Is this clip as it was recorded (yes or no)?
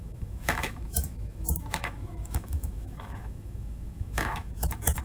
no